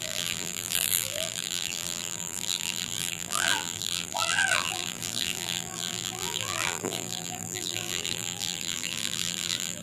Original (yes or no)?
no